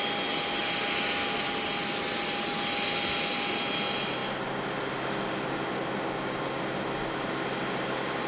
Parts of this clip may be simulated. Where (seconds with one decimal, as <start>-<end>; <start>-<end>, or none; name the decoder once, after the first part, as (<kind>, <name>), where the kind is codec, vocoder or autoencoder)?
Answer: none